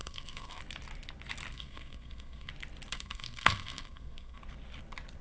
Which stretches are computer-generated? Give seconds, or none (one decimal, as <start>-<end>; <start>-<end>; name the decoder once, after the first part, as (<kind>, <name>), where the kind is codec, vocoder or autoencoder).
0.0-0.6 (codec, SNAC); 1.5-2.5; 2.9-4.4